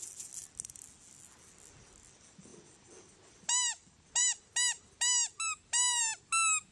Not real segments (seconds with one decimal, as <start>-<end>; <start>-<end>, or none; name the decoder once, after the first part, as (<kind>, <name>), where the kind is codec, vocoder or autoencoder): none